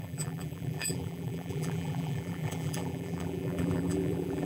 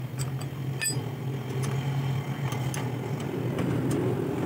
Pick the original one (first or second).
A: second